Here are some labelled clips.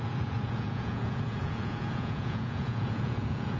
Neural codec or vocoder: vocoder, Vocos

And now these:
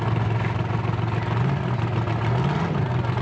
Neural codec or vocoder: none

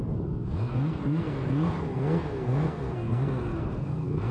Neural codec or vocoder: codec, SNAC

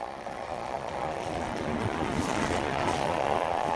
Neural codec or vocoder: vocoder, Vocos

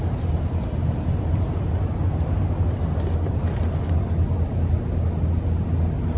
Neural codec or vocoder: none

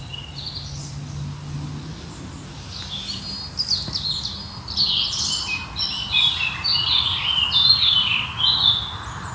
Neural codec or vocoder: none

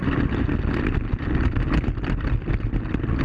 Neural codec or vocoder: none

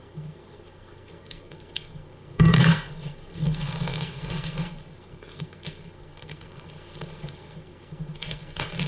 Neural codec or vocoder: codec, SNAC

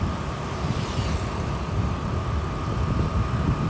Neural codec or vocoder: none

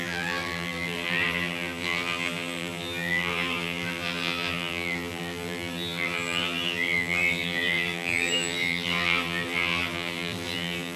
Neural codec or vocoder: vocoder, BigVGAN v2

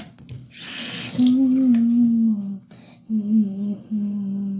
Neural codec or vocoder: none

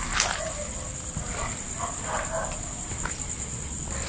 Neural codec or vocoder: none